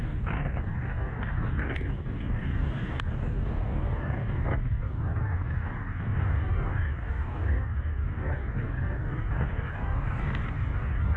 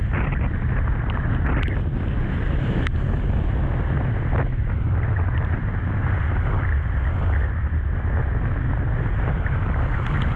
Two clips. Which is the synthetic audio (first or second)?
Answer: first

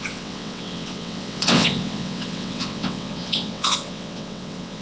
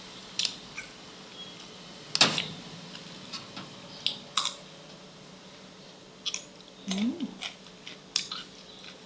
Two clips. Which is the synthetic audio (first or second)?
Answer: first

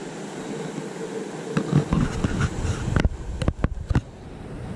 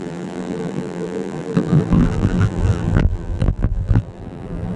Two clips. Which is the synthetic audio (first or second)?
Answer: second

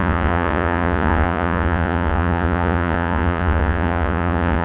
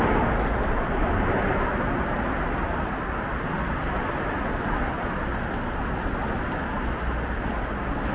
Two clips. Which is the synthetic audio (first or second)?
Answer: first